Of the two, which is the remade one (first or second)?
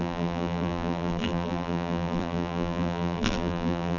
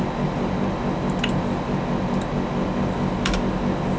first